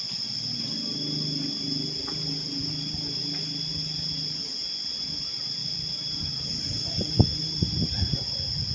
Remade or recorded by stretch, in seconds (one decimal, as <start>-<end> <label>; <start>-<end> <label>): 0.0-8.7 recorded